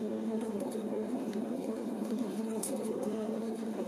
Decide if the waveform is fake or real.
fake